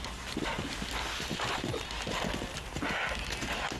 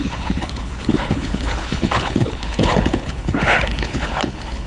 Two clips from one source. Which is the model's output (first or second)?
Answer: second